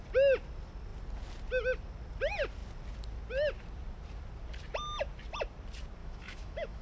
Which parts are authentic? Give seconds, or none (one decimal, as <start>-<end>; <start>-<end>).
0.0-6.0

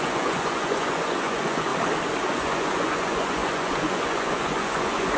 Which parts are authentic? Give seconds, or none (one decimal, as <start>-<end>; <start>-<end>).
1.7-2.3

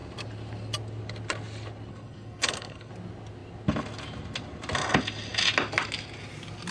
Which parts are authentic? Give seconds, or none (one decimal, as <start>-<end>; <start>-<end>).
0.0-1.9; 2.9-6.7

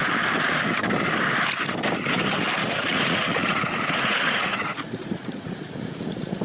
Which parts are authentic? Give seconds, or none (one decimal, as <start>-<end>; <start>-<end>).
0.0-2.6

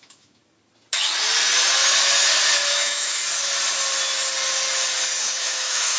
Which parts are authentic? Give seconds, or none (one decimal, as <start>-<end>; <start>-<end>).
0.4-2.7; 3.2-5.2

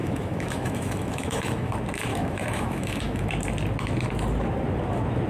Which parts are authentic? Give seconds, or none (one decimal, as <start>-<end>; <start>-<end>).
1.7-2.1; 3.3-5.3